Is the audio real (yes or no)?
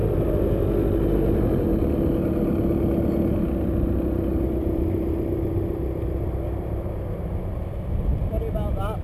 yes